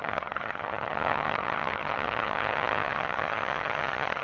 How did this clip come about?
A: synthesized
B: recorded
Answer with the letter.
A